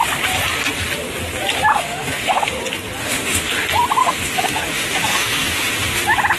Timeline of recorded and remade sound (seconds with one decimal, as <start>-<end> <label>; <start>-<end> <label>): 0.0-1.7 recorded; 1.7-2.6 remade; 2.6-3.0 recorded; 3.0-3.5 remade; 3.5-4.0 recorded; 4.0-6.0 remade; 6.0-6.4 recorded